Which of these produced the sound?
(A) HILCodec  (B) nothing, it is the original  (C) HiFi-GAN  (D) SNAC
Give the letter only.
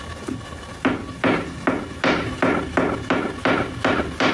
B